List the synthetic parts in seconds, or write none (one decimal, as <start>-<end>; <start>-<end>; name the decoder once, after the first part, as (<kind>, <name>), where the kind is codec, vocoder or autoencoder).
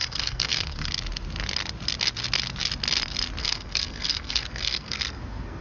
0.0-0.9 (codec, SNAC); 3.4-5.6